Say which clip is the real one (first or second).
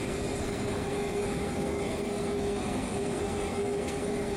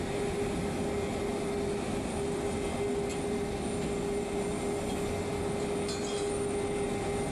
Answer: second